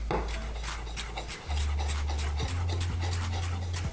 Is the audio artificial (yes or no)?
no